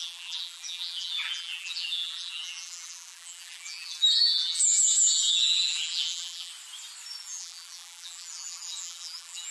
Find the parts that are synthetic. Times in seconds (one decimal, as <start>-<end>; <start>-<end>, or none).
0.0-6.5; 7.2-9.5

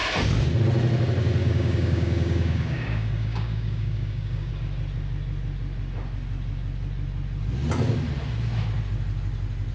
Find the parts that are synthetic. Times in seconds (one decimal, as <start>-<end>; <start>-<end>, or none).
1.4-4.5

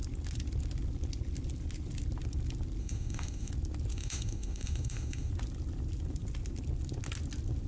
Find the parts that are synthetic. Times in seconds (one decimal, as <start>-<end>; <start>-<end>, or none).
2.8-3.5; 3.9-5.3

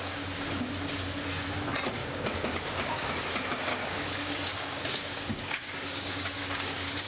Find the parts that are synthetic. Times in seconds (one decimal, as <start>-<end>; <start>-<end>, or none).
2.0-3.2; 3.7-7.1

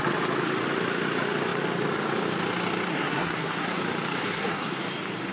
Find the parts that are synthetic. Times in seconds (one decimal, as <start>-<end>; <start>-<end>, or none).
2.9-3.8; 4.2-4.8

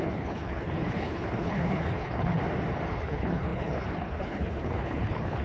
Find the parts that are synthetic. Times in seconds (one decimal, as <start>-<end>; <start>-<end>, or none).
0.0-2.4; 2.9-5.4

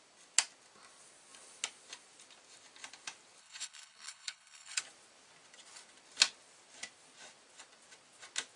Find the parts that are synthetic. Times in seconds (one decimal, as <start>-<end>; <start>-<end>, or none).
3.4-4.8

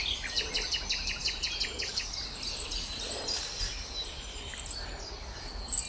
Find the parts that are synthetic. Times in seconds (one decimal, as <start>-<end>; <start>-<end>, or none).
none